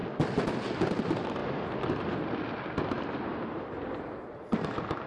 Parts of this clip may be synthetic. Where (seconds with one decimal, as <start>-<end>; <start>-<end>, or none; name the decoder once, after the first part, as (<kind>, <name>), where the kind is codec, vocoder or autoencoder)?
3.3-3.9 (vocoder, BigVGAN v2)